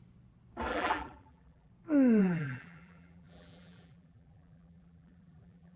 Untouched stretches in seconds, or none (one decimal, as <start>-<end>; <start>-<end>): 0.0-0.7; 1.7-2.2